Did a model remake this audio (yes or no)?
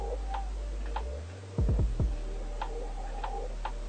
no